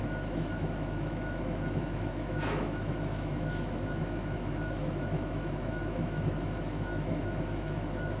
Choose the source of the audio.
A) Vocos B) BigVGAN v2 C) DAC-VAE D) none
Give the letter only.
C